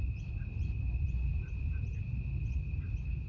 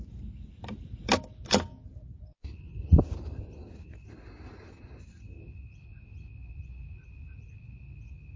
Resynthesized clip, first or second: first